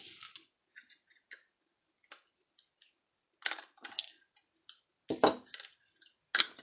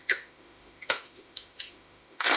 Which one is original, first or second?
first